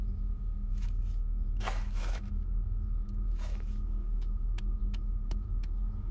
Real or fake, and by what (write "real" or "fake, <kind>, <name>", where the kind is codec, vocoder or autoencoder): fake, autoencoder, DAC-VAE